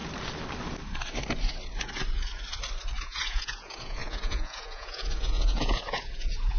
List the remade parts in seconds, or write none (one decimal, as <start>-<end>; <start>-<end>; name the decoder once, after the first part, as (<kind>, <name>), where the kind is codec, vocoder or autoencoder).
3.0-6.6 (vocoder, Vocos)